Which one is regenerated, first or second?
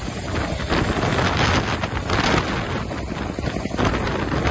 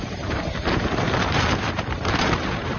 second